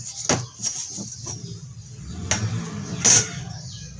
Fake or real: real